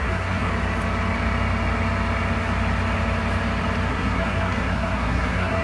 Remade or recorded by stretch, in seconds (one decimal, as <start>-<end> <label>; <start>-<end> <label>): 0.0-0.5 remade; 0.5-3.9 recorded; 3.9-5.6 remade